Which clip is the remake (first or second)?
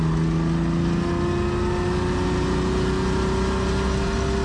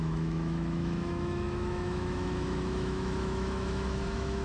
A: second